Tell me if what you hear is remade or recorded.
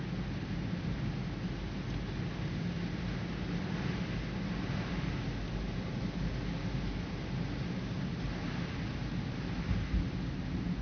recorded